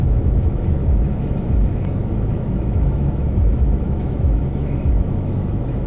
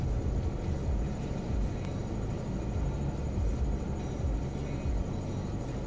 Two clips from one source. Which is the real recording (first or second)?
second